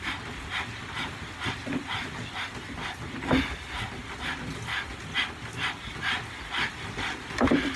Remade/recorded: recorded